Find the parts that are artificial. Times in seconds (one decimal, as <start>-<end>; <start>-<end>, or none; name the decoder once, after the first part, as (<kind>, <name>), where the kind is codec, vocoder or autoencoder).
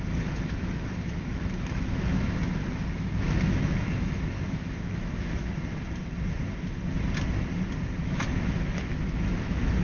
0.0-5.4 (autoencoder, DAC-VAE); 8.0-9.8